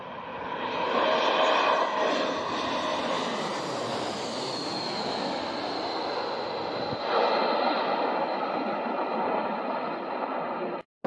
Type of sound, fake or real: real